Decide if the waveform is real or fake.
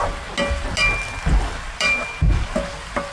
real